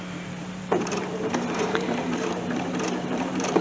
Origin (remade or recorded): remade